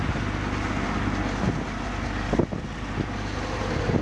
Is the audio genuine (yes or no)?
yes